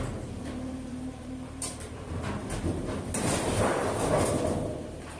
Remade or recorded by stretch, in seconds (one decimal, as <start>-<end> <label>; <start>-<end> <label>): 0.0-0.9 recorded; 0.9-2.2 remade; 2.2-5.2 recorded